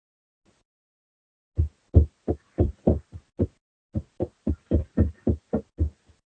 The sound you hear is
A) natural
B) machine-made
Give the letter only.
A